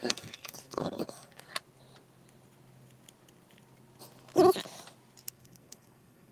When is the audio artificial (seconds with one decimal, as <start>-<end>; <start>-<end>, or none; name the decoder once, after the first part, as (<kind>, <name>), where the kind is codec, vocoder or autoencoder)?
0.0-1.5 (codec, SNAC); 5.3-6.3